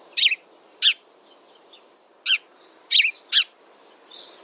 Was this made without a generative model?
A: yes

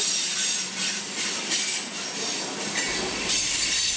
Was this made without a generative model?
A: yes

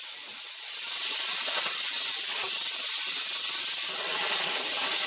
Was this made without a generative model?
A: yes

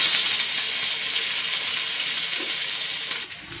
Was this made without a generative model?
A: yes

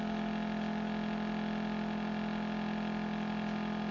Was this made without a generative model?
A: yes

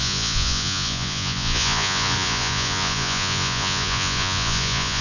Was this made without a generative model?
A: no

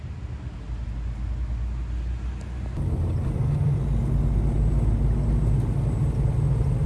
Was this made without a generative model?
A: yes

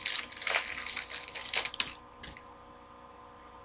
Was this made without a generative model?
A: yes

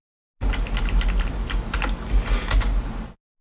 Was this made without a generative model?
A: yes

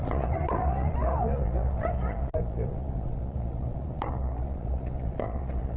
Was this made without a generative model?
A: no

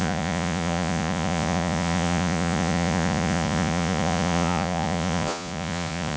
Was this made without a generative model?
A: no